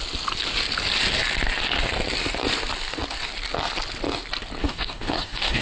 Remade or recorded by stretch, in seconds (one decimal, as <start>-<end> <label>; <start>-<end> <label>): 0.0-4.6 recorded; 4.6-5.6 remade